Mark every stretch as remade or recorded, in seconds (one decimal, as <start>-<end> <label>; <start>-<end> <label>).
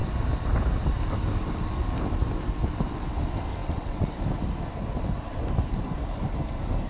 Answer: 0.0-3.6 recorded; 3.6-4.2 remade; 4.2-6.9 recorded